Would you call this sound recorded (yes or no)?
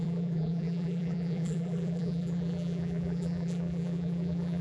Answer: no